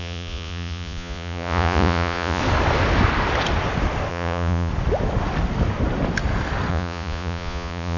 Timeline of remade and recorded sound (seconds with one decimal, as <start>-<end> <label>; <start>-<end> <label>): 0.0-2.4 remade; 2.4-4.1 recorded; 4.1-4.7 remade; 4.7-6.7 recorded; 6.7-8.0 remade